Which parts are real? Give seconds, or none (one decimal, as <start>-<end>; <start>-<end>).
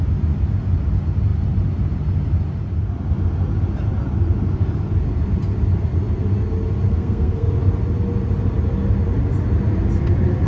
0.0-6.9; 7.5-10.5